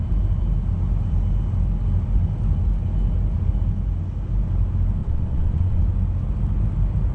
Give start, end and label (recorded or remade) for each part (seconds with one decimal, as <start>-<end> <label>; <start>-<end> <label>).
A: 0.0-5.0 recorded; 5.0-5.8 remade; 5.8-7.1 recorded